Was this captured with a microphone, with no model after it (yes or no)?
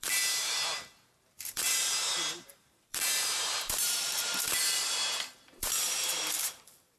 no